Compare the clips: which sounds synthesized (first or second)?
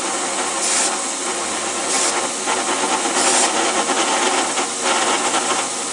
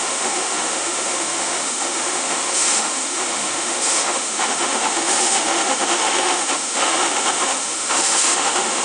second